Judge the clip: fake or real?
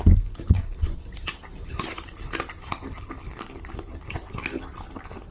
real